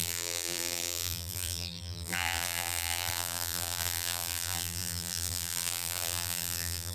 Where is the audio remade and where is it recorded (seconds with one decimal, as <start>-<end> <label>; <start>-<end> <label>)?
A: 0.0-6.9 remade